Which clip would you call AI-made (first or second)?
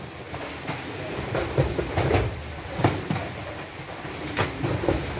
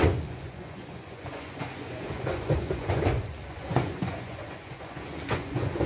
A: second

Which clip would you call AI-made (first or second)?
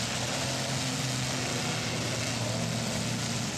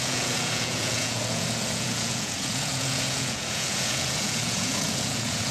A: second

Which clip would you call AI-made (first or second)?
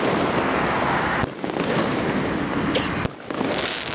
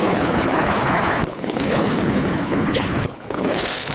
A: second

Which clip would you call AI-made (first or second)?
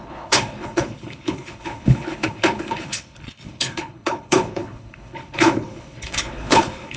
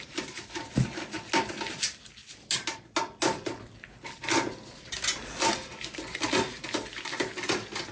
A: first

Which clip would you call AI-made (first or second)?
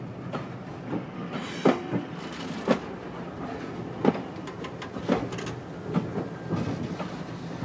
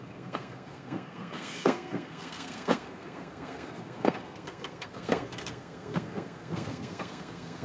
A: second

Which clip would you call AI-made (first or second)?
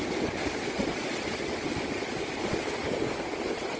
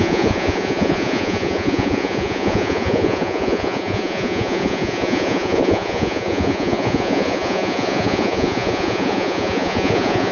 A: second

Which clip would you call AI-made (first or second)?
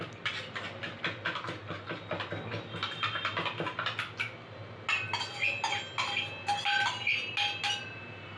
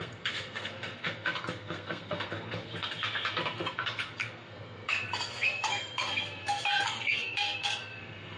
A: second